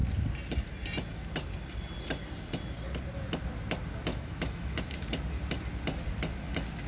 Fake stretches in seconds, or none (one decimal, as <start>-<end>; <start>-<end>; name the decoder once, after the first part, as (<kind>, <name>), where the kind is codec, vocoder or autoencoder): 4.1-4.8 (autoencoder, DAC-VAE)